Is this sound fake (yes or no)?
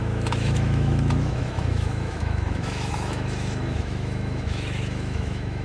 yes